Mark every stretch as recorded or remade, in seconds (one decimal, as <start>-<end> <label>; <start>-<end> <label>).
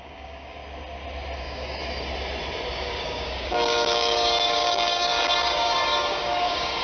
0.0-0.6 remade; 0.6-1.4 recorded; 1.4-1.8 remade; 1.8-2.7 recorded; 2.7-6.8 remade